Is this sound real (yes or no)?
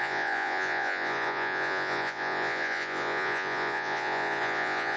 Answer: no